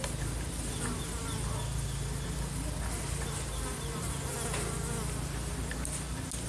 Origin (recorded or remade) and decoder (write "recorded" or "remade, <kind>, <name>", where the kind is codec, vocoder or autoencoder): recorded